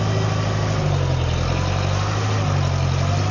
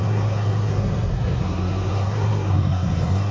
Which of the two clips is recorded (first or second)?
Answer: first